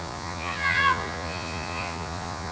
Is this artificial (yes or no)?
yes